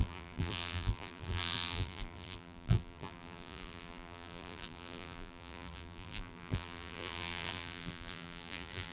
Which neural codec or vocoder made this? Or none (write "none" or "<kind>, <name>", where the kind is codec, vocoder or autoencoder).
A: vocoder, BigVGAN v2